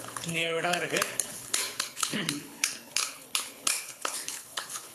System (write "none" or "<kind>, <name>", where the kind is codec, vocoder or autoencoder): codec, HILCodec